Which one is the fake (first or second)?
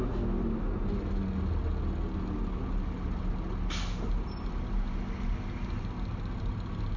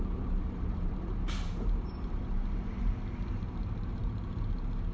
second